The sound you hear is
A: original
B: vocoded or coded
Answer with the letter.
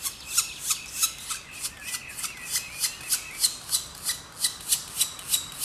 A